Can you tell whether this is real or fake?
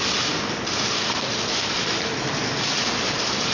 real